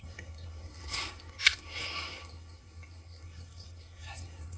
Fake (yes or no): yes